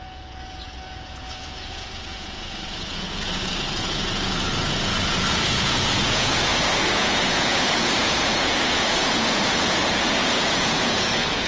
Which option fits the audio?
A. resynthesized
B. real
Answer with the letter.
A